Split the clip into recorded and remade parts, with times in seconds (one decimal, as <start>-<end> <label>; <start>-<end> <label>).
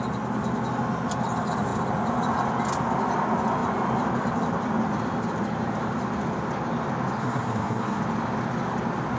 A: 0.0-7.2 recorded; 7.2-8.0 remade; 8.0-9.2 recorded